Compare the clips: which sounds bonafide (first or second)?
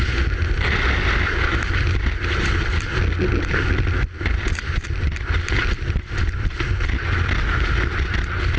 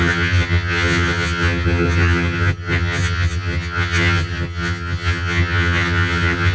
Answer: first